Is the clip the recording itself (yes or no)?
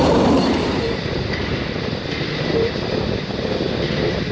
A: yes